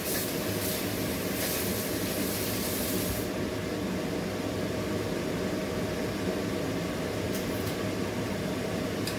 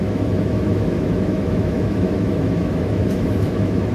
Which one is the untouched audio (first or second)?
first